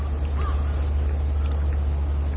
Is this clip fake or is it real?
real